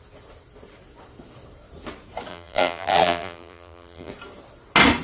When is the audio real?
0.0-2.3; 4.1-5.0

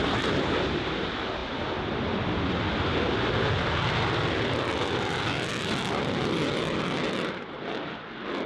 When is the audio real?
0.7-8.5

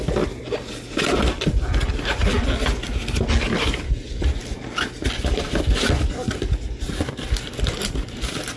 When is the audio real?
0.0-8.6

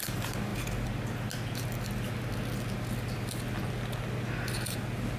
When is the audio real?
0.0-5.2

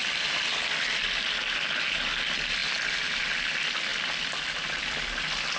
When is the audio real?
1.0-2.6; 3.2-3.9; 4.8-5.6

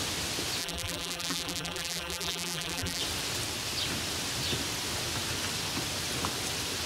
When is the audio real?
0.0-0.6; 3.0-6.9

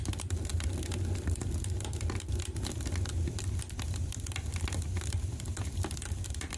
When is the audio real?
none